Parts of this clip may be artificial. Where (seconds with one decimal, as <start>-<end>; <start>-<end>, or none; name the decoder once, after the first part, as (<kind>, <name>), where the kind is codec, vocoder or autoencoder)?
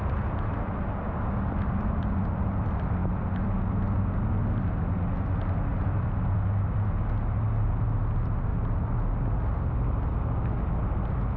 none